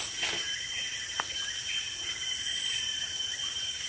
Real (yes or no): yes